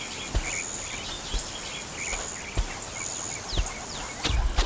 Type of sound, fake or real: real